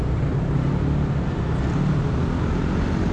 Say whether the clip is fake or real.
real